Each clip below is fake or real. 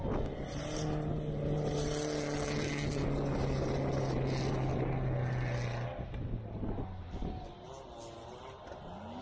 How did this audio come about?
real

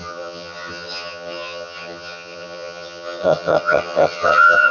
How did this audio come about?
fake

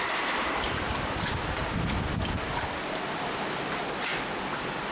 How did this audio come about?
real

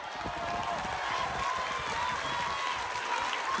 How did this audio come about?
real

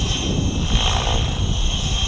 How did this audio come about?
real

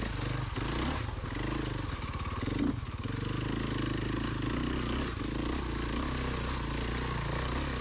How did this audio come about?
real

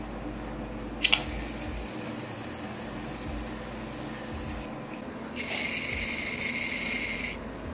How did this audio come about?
real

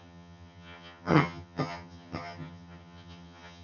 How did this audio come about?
fake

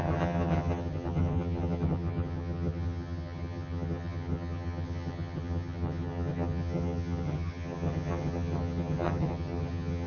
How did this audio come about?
fake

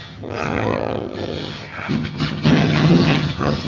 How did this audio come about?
fake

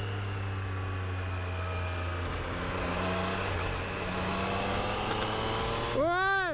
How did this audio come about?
real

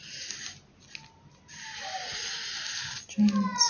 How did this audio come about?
real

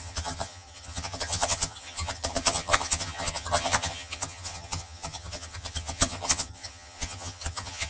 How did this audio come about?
fake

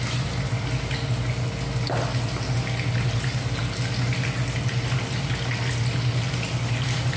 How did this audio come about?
real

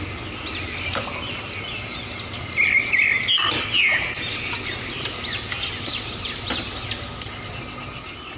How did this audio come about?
real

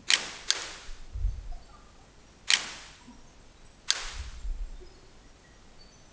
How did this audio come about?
real